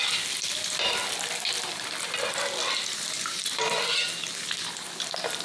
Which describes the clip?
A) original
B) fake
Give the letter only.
A